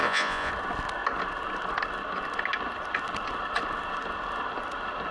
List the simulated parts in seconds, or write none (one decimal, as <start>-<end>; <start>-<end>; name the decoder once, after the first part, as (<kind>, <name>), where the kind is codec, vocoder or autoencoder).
0.0-0.5 (vocoder, Vocos)